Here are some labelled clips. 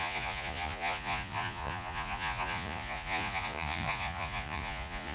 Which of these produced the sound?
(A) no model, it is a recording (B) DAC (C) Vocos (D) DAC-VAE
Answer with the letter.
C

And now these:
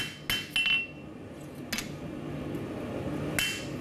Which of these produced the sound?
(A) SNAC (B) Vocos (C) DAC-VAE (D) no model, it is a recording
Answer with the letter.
D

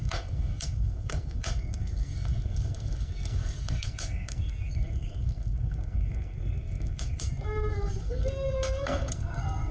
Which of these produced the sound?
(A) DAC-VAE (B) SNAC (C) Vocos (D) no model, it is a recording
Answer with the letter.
B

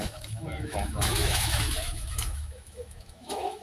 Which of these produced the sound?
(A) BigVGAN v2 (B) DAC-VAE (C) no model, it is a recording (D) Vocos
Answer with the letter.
B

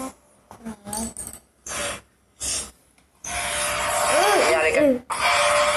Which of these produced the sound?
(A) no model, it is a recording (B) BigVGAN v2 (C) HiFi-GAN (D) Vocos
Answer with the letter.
A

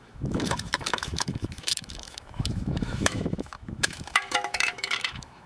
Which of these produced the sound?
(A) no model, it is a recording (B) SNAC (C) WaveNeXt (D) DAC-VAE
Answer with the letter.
D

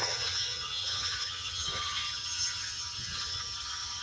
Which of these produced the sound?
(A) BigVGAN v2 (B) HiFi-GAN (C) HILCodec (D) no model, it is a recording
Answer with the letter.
B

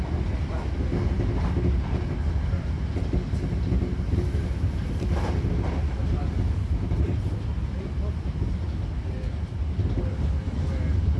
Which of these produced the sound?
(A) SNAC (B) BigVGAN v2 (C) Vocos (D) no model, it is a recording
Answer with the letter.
D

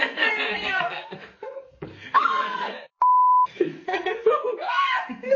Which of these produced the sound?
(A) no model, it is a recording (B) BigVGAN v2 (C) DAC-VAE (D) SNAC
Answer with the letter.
D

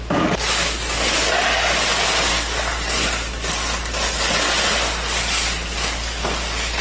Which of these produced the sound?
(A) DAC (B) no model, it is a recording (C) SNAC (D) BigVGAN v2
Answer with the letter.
B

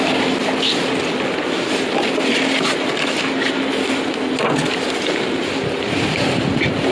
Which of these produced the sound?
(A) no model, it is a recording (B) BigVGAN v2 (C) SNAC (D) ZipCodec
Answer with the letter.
A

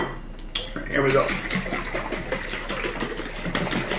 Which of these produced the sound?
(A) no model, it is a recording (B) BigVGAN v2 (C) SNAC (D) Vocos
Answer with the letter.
A